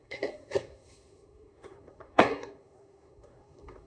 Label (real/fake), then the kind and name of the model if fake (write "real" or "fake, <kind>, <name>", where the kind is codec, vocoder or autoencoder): fake, codec, SNAC